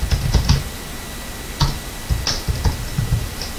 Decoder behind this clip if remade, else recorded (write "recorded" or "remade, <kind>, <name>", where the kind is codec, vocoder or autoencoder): recorded